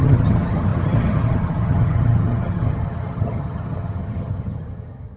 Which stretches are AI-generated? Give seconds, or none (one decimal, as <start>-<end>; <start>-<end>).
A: 0.0-5.2